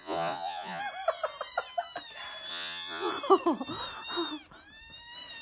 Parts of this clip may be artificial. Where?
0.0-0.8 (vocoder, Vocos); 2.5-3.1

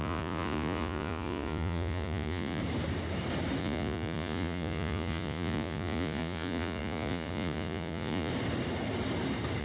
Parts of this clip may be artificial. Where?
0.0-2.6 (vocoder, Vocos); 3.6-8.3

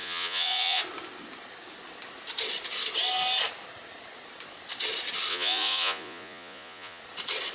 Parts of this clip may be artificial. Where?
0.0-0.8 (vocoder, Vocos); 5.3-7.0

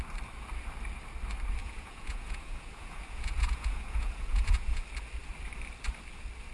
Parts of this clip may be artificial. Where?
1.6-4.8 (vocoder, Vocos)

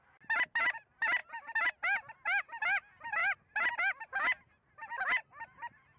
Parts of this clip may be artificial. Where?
none

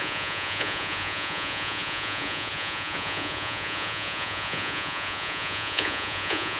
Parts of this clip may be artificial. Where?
0.0-6.6 (vocoder, Vocos)

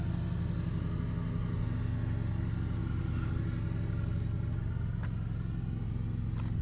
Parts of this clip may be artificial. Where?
none